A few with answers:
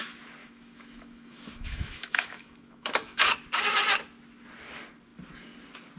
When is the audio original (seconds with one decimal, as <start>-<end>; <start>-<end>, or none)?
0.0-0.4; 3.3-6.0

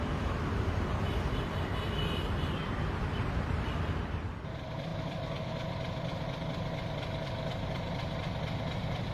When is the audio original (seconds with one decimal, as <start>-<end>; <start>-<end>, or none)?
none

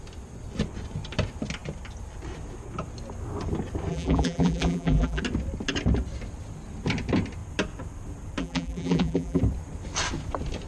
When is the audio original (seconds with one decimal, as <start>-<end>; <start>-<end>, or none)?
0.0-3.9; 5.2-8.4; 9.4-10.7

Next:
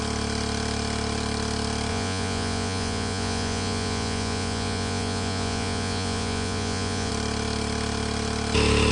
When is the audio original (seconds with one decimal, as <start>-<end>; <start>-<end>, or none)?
0.0-1.9; 7.1-8.9

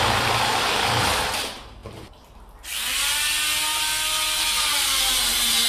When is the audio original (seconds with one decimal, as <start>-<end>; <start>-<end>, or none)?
0.0-5.7

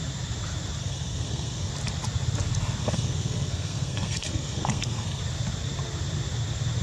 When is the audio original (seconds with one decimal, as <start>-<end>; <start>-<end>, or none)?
0.0-0.8; 1.7-2.8; 5.2-6.8